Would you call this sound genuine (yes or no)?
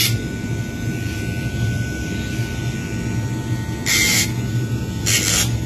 yes